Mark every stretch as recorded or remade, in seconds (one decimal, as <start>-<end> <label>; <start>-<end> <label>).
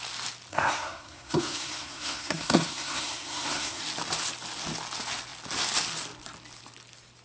0.0-0.5 recorded; 0.5-3.8 remade; 3.8-7.2 recorded